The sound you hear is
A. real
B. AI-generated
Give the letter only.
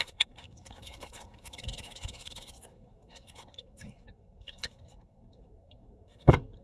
B